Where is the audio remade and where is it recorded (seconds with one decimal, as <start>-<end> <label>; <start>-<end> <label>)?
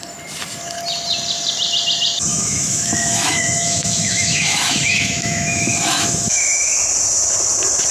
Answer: 0.0-2.3 recorded; 2.3-6.8 remade; 6.8-7.9 recorded